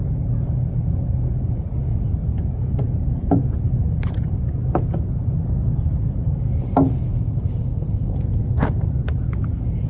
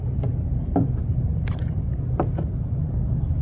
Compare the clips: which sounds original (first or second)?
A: second